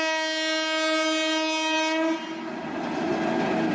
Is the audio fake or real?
real